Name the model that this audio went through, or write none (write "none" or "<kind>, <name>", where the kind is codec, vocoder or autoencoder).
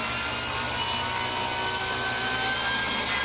none